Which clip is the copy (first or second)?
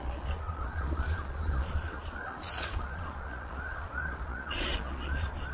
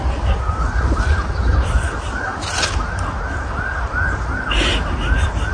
first